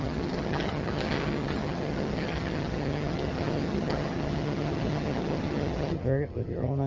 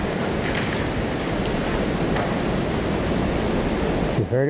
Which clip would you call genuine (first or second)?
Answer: second